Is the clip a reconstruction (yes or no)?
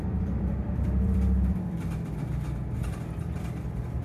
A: yes